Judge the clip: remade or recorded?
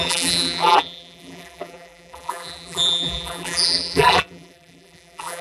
remade